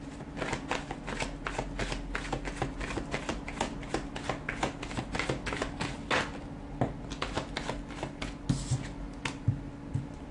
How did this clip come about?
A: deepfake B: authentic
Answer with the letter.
B